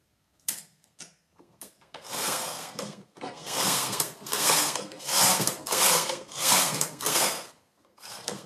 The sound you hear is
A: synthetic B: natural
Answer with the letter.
A